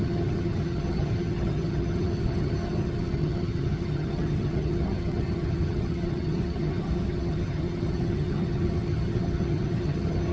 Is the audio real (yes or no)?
no